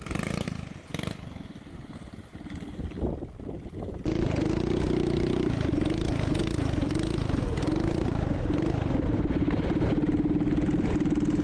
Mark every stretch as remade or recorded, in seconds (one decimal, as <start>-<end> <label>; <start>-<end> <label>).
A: 0.0-11.4 recorded